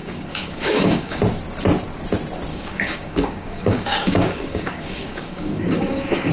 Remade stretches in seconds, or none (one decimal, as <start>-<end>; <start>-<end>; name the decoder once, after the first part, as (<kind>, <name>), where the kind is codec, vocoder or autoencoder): 0.0-1.2 (codec, DAC); 2.5-6.3